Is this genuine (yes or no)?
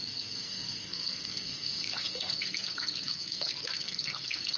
no